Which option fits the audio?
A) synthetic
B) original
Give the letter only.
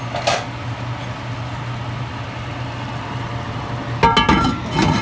B